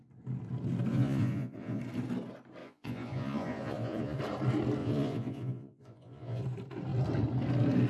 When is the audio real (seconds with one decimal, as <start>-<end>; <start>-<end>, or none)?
0.0-0.9; 1.8-2.6; 4.2-4.8; 6.4-7.9